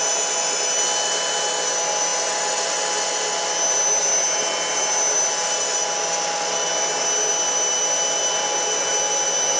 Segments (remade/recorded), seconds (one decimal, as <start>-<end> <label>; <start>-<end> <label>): 0.0-9.6 recorded